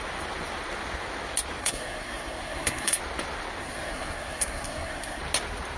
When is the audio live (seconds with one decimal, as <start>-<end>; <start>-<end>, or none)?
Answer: 0.0-1.6; 3.0-3.6; 5.2-5.8

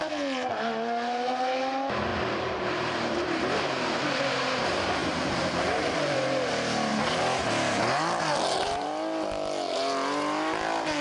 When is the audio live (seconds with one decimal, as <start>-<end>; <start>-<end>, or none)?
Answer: 0.0-2.1; 4.2-5.0; 6.5-11.0

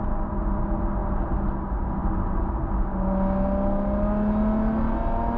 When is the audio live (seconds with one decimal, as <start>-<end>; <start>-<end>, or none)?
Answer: 0.0-5.4

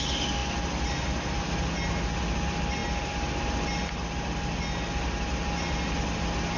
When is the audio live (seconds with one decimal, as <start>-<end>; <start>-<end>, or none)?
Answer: 0.0-6.6

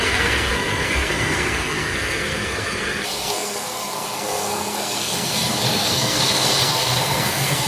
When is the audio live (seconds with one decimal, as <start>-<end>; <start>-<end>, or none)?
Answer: none

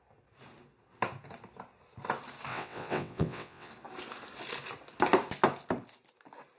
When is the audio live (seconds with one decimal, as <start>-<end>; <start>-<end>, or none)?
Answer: 0.0-2.5; 3.7-6.6

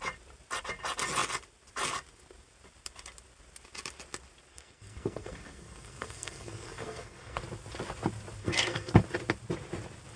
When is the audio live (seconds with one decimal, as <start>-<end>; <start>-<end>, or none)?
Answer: 0.0-4.5; 7.4-8.4; 8.9-10.2

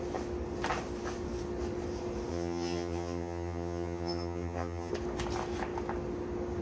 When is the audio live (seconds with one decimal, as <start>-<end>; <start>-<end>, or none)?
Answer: 0.0-2.3; 4.9-6.6